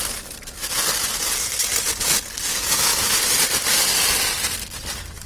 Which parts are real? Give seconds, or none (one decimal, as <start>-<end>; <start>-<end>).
0.0-2.5; 3.2-5.3